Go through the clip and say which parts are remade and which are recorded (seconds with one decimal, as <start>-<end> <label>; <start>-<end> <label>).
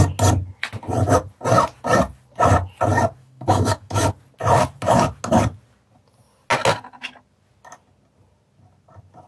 0.0-3.2 recorded; 3.2-4.1 remade; 4.1-9.3 recorded